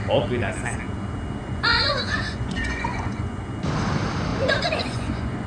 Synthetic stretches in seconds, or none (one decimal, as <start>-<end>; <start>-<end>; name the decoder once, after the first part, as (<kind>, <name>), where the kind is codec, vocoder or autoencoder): 1.4-3.4 (vocoder, Vocos); 4.3-5.5